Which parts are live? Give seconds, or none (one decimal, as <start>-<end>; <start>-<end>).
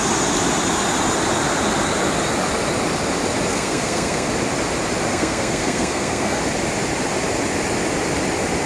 0.0-3.5; 4.3-5.1; 6.4-8.7